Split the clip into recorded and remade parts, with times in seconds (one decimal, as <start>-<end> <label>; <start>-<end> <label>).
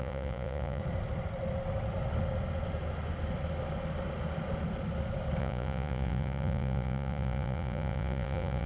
0.0-0.8 remade; 0.8-5.4 recorded; 5.4-8.7 remade